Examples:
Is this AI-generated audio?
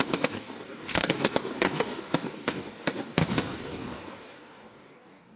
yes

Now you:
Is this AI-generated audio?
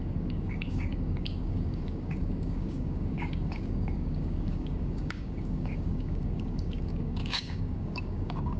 yes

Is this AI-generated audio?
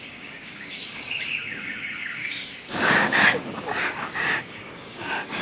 yes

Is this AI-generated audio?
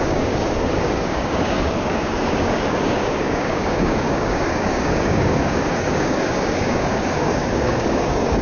yes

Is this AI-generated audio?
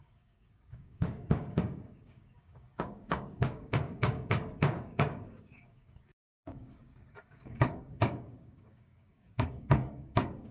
yes